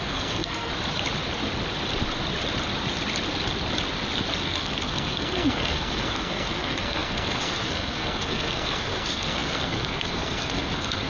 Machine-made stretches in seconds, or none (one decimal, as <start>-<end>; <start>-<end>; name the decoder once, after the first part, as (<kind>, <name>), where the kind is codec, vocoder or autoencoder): 0.0-0.7 (codec, SNAC); 4.4-11.1